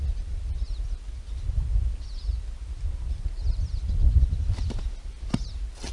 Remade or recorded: recorded